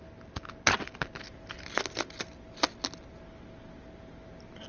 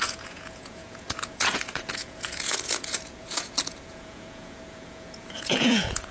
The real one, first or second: first